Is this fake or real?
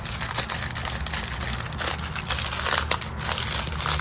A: real